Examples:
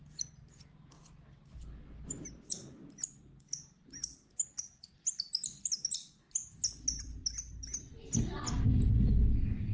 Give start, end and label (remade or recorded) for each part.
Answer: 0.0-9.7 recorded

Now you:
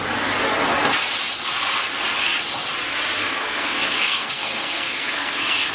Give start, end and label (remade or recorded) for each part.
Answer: 0.0-3.2 recorded; 3.2-5.7 remade

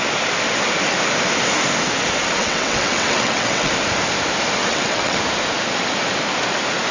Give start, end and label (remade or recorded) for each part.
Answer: 0.0-2.4 recorded; 2.4-3.7 remade; 3.7-4.6 recorded; 4.6-5.2 remade; 5.2-6.9 recorded

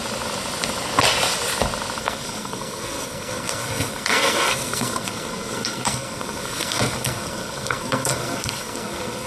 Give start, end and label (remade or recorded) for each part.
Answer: 0.0-2.0 recorded; 2.0-9.3 remade

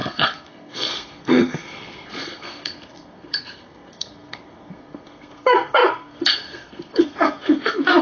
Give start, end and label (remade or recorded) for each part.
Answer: 0.0-8.0 remade

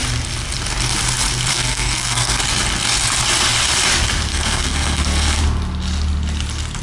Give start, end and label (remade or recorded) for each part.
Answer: 0.0-1.5 recorded; 1.5-2.4 remade; 2.4-4.3 recorded; 4.3-5.4 remade; 5.4-6.8 recorded

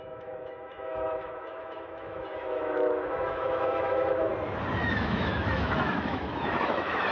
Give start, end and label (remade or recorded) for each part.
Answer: 0.0-4.3 remade; 4.3-4.8 recorded; 4.8-7.1 remade